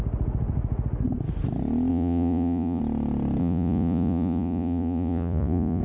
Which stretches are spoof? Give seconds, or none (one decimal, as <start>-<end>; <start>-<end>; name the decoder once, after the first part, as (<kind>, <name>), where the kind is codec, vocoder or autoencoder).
1.9-2.8 (vocoder, Vocos); 3.4-5.8